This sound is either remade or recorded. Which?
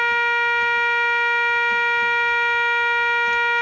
recorded